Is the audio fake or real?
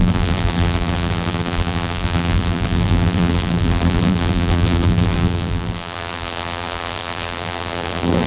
fake